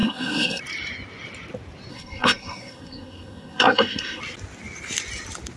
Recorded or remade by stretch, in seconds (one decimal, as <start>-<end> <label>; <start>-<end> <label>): 0.0-0.6 remade; 0.6-1.9 recorded; 1.9-4.2 remade; 4.2-5.6 recorded